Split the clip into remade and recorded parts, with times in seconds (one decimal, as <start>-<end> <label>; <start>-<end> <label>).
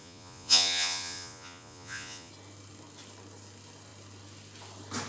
0.0-2.3 remade; 2.3-5.1 recorded